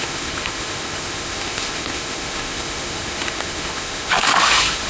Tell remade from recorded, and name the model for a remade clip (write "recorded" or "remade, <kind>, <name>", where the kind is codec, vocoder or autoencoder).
remade, autoencoder, DAC-VAE